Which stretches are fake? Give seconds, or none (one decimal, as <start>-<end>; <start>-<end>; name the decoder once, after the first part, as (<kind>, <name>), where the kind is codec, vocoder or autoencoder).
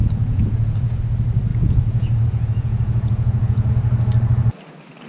0.0-1.0 (vocoder, Vocos); 1.5-3.7